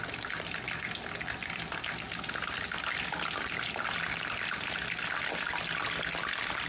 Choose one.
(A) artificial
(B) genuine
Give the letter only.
B